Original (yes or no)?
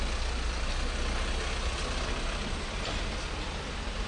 yes